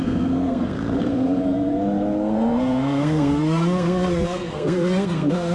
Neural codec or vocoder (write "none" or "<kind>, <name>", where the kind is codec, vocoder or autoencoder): codec, SNAC